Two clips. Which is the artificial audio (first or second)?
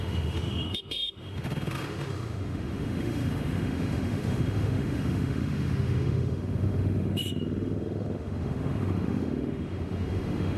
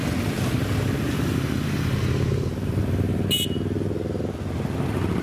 first